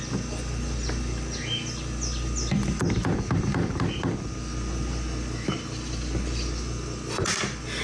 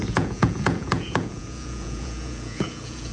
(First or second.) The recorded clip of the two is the first